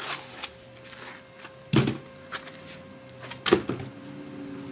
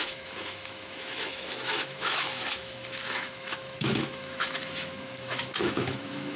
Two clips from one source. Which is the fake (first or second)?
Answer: second